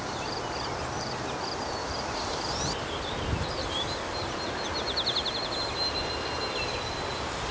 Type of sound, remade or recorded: recorded